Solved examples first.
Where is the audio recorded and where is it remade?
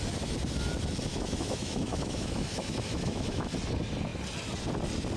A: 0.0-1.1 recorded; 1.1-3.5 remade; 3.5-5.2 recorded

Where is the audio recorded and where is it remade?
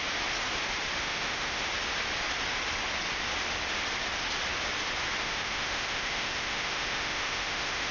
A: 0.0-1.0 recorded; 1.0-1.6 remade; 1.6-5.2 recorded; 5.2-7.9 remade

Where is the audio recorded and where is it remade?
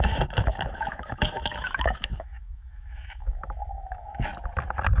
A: 0.0-4.3 remade; 4.3-5.0 recorded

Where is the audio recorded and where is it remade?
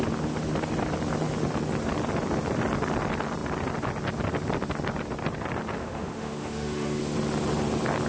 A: 0.0-5.8 recorded; 5.8-7.0 remade; 7.0-8.1 recorded